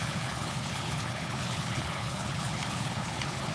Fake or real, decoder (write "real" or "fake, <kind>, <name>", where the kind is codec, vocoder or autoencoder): fake, codec, HILCodec